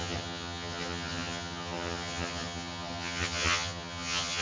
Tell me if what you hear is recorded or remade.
remade